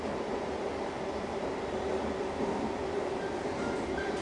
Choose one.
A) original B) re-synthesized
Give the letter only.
A